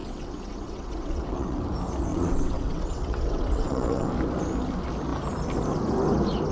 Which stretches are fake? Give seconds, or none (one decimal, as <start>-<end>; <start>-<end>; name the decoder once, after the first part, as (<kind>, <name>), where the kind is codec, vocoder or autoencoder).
0.0-1.6 (vocoder, WaveNeXt); 2.1-4.1